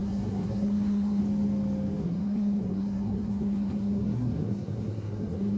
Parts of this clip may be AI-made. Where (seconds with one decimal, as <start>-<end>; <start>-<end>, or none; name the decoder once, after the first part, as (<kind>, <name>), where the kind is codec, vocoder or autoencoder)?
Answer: 0.0-1.2 (codec, SNAC); 2.0-5.6